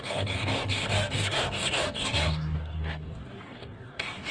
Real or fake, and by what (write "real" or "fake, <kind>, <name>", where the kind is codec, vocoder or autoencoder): fake, codec, DAC